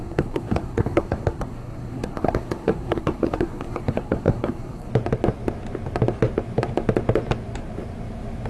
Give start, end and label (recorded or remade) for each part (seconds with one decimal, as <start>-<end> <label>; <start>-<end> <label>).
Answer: 0.0-4.9 remade; 4.9-8.5 recorded